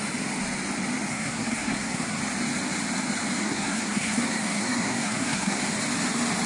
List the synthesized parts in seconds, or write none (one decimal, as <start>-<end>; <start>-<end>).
1.1-2.2; 3.4-5.6

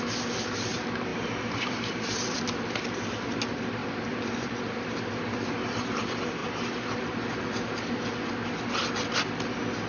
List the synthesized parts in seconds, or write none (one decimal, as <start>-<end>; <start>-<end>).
1.1-3.3; 3.8-5.0

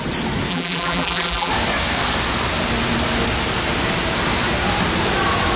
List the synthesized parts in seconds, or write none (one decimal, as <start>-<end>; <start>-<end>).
0.5-1.5

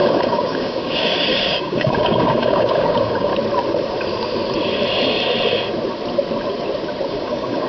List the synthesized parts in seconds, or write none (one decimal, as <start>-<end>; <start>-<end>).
0.0-3.3; 7.1-7.7

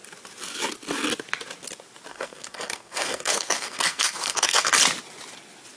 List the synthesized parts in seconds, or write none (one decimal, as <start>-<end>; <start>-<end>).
2.1-4.7